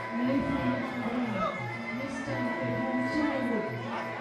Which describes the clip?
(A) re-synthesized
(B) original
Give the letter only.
B